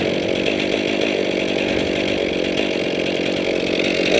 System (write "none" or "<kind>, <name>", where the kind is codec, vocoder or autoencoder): none